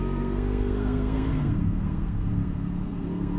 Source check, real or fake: fake